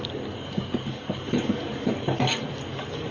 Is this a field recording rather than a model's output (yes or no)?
no